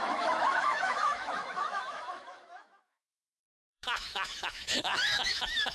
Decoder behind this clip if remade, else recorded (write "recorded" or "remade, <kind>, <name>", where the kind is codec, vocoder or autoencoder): remade, autoencoder, DAC-VAE